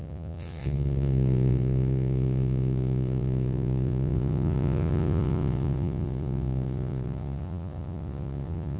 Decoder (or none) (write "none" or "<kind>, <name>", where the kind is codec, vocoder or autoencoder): vocoder, Vocos